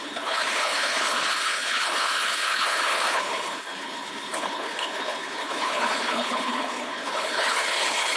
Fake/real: fake